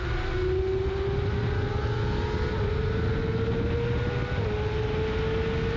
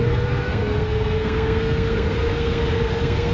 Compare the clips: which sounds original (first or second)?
first